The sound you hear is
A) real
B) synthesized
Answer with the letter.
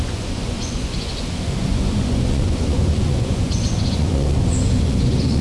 B